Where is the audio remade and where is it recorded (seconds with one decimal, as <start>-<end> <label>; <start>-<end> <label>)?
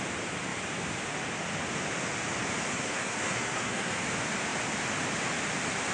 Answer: 0.0-2.7 recorded; 2.7-3.9 remade; 3.9-5.9 recorded